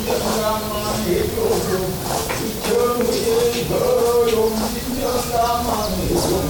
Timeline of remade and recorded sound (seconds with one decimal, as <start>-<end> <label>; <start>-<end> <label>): 0.0-2.2 recorded; 2.2-3.2 remade; 3.2-6.5 recorded